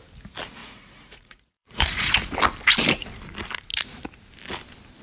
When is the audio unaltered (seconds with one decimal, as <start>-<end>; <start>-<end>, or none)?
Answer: 0.0-0.6; 2.1-5.0